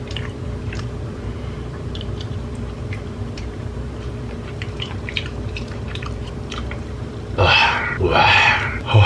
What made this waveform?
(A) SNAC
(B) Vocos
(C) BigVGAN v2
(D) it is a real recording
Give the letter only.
C